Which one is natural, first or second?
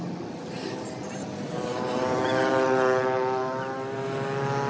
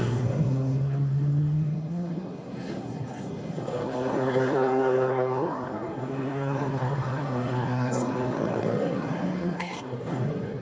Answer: first